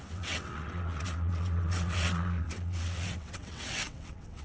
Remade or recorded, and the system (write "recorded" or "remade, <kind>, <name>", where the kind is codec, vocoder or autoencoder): remade, vocoder, WaveNeXt